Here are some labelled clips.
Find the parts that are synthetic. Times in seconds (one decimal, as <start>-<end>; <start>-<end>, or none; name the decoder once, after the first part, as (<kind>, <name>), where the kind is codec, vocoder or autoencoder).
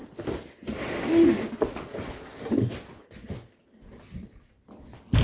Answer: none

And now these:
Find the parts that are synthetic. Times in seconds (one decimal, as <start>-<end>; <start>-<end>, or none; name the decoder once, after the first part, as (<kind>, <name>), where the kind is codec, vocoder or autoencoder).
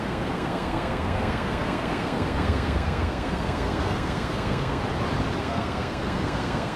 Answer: 0.0-4.8 (codec, SNAC); 5.4-6.8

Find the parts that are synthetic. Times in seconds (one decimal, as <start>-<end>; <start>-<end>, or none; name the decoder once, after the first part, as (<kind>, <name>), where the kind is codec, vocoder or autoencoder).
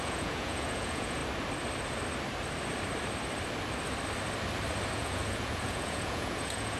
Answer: 0.0-1.2 (vocoder, Vocos); 4.9-6.8